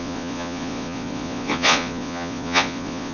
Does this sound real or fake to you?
fake